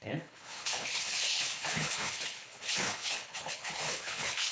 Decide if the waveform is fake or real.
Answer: fake